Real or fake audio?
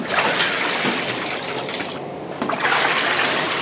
real